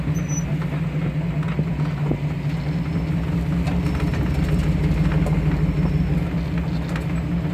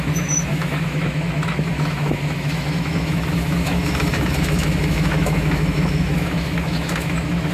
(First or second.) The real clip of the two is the first